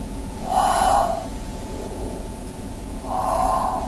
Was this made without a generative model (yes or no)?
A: no